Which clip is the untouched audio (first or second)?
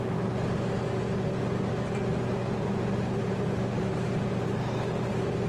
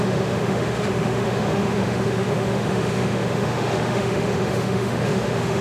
first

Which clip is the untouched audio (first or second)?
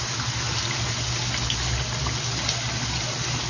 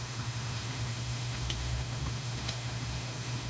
first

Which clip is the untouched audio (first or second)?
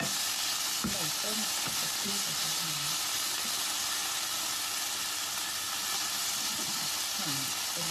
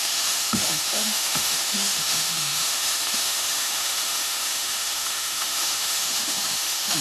first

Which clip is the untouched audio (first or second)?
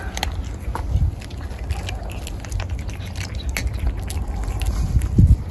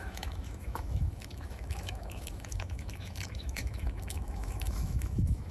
first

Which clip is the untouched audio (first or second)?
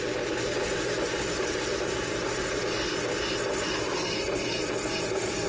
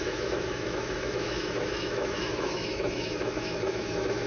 first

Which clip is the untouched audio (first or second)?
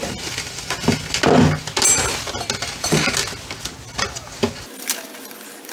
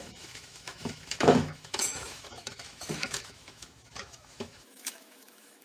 first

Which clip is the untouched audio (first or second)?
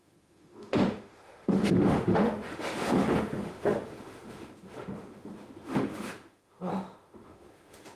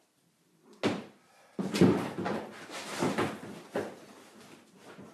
second